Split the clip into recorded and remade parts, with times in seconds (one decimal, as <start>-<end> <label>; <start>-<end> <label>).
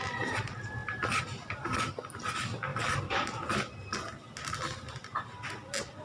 0.0-6.0 recorded